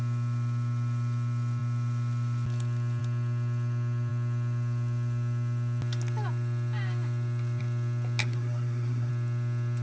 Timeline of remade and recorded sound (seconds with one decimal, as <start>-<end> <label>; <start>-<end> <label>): 0.0-8.2 recorded; 8.2-9.1 remade; 9.1-9.8 recorded